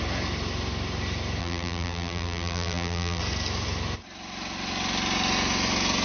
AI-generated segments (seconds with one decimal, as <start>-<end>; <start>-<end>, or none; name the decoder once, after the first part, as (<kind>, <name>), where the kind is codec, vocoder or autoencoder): 1.4-3.2 (vocoder, BigVGAN v2)